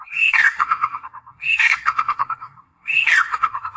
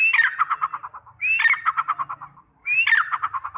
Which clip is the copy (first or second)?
first